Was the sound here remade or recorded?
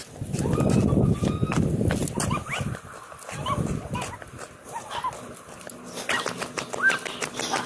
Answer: recorded